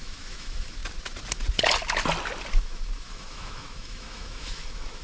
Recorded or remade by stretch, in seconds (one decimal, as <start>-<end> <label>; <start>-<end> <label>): 0.0-0.8 remade; 0.8-2.6 recorded; 2.6-5.0 remade